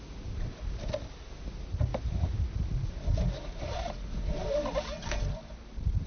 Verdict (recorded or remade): recorded